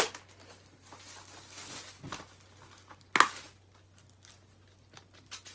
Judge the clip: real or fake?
real